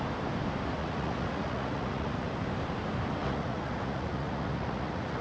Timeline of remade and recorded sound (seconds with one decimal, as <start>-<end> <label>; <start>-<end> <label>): 0.0-0.8 recorded; 0.8-2.3 remade; 2.3-3.2 recorded; 3.2-5.2 remade